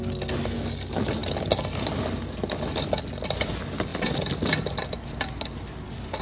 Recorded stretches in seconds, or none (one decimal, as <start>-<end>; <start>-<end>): 0.0-3.9